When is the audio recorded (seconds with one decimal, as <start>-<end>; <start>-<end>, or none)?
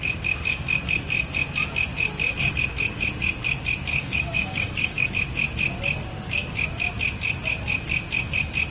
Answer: 0.0-3.9; 5.1-8.7